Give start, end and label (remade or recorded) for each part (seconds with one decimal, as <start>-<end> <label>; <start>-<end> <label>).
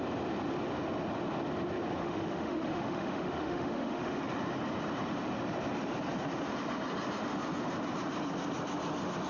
0.0-2.0 recorded; 2.0-4.2 remade; 4.2-9.3 recorded